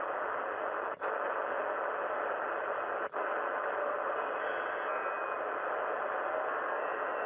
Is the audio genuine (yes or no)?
yes